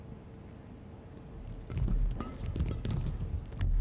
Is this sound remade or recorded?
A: recorded